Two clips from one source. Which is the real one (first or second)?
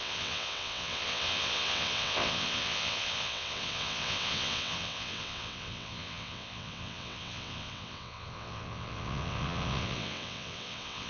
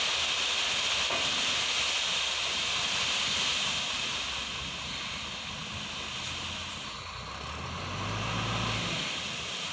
second